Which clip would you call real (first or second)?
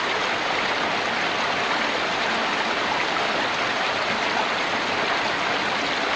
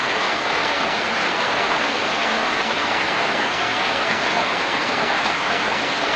first